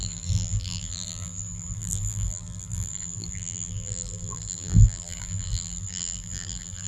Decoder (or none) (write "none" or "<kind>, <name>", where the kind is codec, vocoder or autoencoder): vocoder, BigVGAN v2